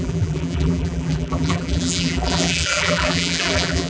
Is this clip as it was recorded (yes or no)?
no